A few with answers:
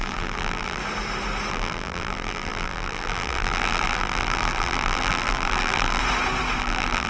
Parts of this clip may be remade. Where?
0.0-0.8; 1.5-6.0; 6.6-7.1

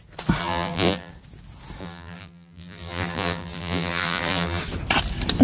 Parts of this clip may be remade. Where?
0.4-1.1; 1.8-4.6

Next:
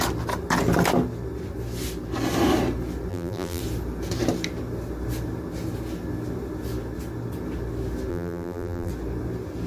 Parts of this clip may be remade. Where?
3.1-3.6; 8.1-8.9

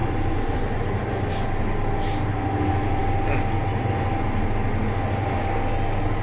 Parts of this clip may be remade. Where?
0.0-1.1

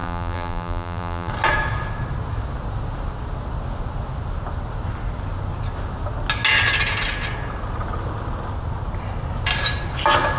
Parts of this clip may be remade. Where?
0.0-1.3

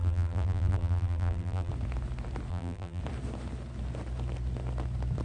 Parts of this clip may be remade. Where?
0.0-1.7; 2.5-3.0

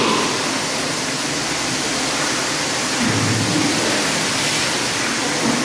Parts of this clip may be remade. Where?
3.6-5.6